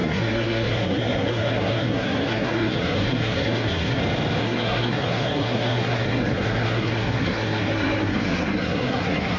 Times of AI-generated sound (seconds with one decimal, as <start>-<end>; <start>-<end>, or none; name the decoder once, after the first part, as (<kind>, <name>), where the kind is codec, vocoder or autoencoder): 0.0-4.0 (codec, SNAC); 4.4-9.4